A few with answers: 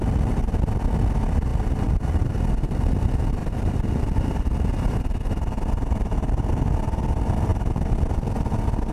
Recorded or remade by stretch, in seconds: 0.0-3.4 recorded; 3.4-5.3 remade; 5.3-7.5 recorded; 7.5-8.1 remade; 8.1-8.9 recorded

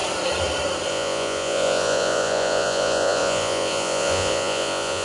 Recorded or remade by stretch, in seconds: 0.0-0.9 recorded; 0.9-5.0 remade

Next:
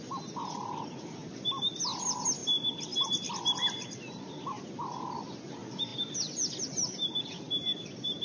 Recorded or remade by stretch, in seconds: 0.0-5.9 recorded; 5.9-6.5 remade; 6.5-8.2 recorded

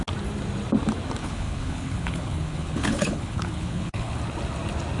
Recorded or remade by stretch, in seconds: 0.0-1.2 recorded; 1.2-4.2 remade; 4.2-5.0 recorded